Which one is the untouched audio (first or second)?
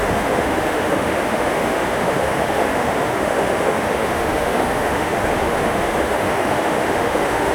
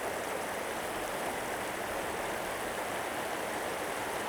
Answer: second